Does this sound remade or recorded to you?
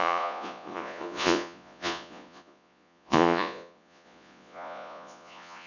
remade